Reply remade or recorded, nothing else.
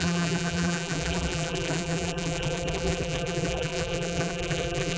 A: remade